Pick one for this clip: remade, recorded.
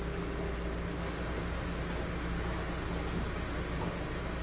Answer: recorded